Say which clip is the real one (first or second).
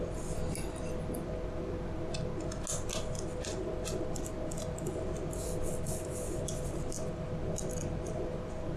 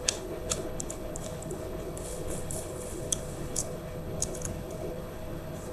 first